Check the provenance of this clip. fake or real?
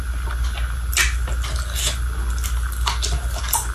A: real